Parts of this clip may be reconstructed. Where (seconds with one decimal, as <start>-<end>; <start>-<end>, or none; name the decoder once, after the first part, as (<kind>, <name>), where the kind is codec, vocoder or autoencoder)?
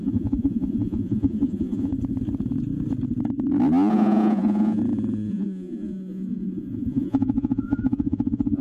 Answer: 0.0-1.9 (vocoder, Vocos); 3.9-4.8; 5.3-8.6